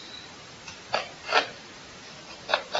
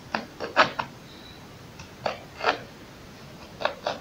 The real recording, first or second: second